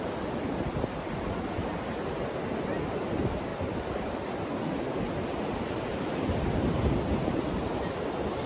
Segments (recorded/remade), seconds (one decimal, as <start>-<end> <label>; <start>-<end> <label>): 0.0-8.5 recorded